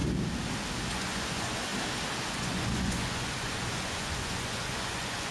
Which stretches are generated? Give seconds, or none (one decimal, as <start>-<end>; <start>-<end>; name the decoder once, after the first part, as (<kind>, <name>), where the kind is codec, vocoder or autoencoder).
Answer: 0.9-1.7 (vocoder, Vocos); 2.2-5.3